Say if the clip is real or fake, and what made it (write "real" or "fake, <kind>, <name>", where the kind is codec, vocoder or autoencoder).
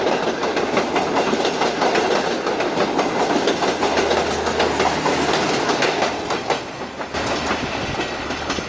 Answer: real